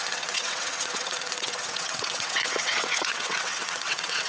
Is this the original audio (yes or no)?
no